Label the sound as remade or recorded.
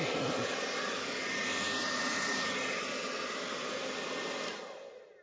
recorded